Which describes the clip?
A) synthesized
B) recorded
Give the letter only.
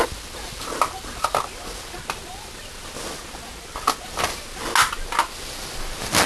B